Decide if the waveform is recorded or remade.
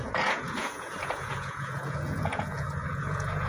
remade